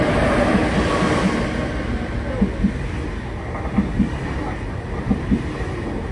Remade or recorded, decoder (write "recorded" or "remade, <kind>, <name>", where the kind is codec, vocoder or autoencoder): recorded